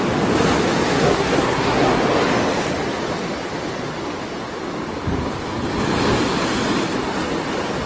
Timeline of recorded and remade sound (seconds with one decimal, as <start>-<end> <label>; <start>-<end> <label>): 0.0-0.9 recorded; 0.9-2.0 remade; 2.0-7.9 recorded